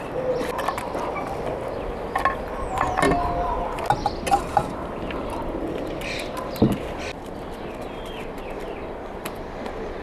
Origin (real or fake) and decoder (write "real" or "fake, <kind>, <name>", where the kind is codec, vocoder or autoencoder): real